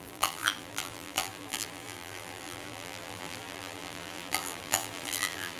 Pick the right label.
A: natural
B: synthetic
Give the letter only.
B